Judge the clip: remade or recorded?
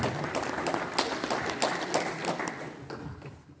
recorded